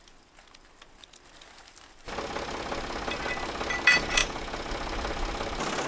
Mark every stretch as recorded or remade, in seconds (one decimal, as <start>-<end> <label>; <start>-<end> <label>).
0.0-4.2 recorded; 4.2-4.7 remade; 4.7-5.9 recorded